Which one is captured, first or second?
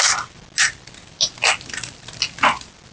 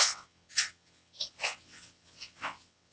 first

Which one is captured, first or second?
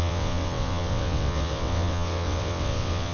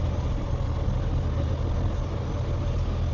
second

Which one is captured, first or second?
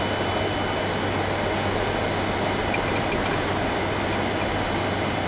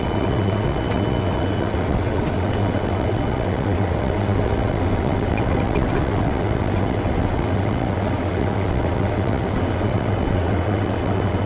first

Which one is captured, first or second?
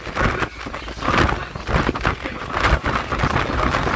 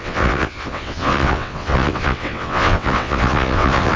first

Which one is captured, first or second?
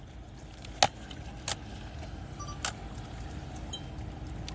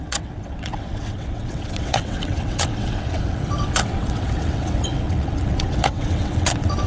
first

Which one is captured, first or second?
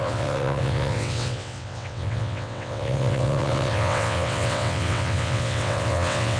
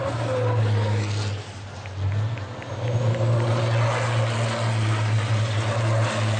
second